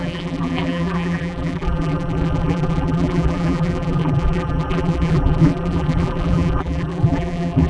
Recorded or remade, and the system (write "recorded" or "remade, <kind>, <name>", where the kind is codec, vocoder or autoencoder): remade, vocoder, BigVGAN v2